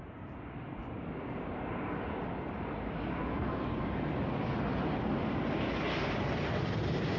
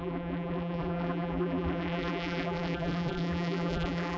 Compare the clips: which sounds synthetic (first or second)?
second